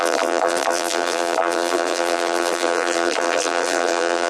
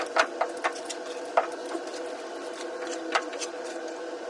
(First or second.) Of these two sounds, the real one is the second